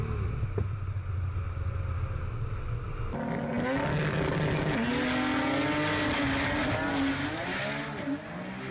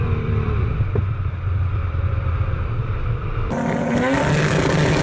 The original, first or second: first